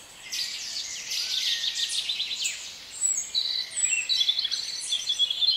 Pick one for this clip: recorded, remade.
recorded